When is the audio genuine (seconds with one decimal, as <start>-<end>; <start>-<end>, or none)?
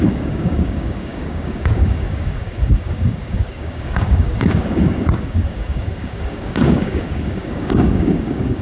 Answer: none